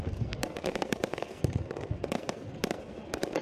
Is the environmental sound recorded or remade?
remade